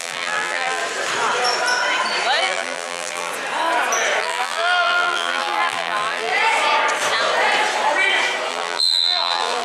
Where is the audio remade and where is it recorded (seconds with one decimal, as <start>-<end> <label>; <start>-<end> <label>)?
0.0-0.8 remade; 0.8-2.4 recorded; 2.4-3.3 remade; 3.3-4.2 recorded; 4.2-6.3 remade; 6.3-8.5 recorded; 8.5-9.6 remade